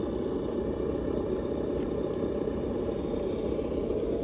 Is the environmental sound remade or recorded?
recorded